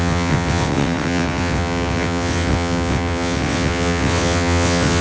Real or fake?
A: fake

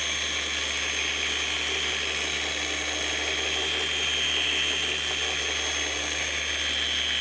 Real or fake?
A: real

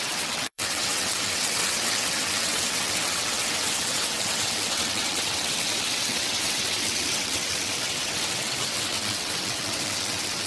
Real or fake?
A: fake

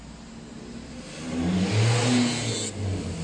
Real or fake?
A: real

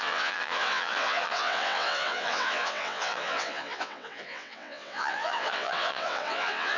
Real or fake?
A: fake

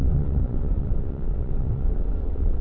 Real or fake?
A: fake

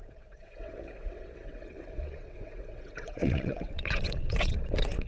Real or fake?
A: fake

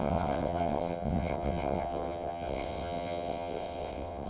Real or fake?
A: fake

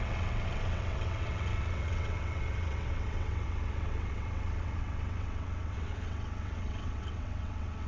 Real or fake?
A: fake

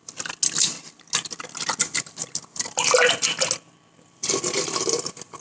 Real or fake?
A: real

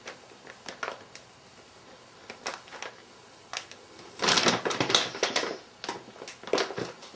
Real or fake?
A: real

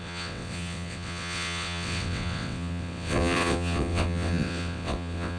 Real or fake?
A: fake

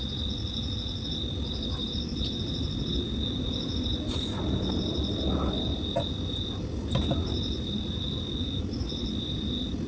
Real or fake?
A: real